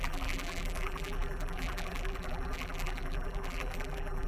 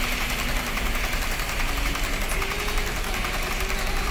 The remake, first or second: first